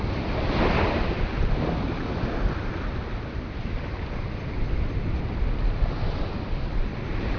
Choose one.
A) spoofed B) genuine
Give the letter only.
B